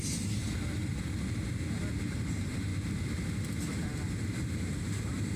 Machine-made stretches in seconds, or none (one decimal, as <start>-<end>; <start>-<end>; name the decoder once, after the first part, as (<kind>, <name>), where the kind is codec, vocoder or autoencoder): 0.0-0.9 (vocoder, BigVGAN v2); 2.1-2.7; 3.3-3.9; 4.6-5.4